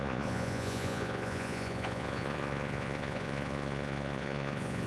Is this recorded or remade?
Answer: remade